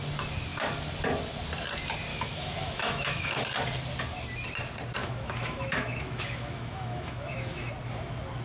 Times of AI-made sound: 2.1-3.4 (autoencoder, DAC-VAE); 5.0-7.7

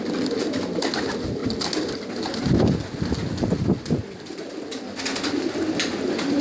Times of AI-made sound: none

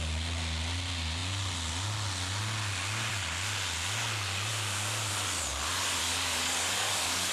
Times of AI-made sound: 6.0-7.3 (codec, DAC)

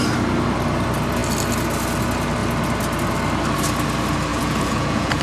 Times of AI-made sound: 4.3-5.2 (vocoder, Vocos)

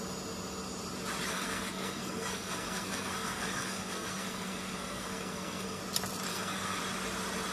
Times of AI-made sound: 1.3-5.8 (codec, SNAC); 6.3-6.8

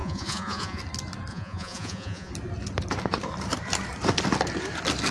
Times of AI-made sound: 0.0-0.8 (vocoder, Vocos); 1.3-2.3